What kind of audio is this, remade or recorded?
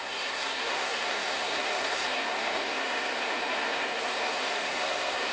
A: remade